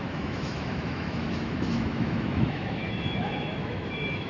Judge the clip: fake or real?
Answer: fake